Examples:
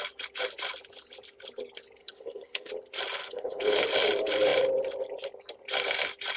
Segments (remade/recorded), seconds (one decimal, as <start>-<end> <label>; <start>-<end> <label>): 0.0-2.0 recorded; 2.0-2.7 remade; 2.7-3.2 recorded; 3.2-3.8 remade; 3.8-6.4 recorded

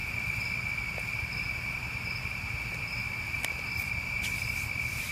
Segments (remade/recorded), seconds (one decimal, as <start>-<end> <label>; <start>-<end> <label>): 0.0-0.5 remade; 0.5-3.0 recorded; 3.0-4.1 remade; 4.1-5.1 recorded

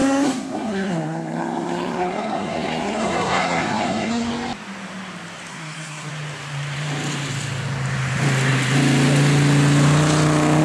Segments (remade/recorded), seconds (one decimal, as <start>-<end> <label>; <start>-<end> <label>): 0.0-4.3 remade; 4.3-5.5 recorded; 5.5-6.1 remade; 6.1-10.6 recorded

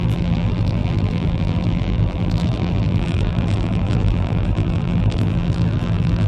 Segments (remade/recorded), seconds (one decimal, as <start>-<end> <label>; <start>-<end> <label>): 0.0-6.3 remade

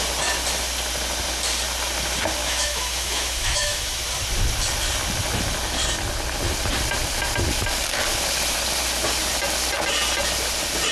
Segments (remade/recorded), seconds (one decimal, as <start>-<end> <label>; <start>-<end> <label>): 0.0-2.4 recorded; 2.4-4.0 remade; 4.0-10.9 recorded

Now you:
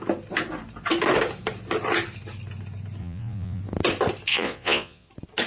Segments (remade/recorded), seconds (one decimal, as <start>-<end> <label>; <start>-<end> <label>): 0.0-3.0 recorded; 3.0-3.6 remade; 3.6-4.3 recorded; 4.3-5.1 remade; 5.1-5.5 recorded

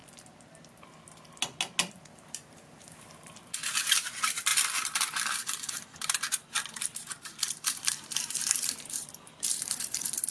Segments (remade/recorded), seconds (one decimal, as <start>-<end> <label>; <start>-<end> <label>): 0.0-1.9 recorded; 1.9-4.5 remade; 4.5-5.7 recorded; 5.7-10.3 remade

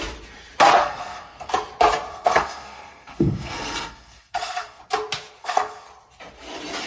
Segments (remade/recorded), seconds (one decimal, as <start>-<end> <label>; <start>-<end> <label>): 0.0-0.8 recorded; 0.8-1.5 remade; 1.5-2.1 recorded; 2.1-4.8 remade; 4.8-5.4 recorded; 5.4-5.9 remade; 5.9-6.9 recorded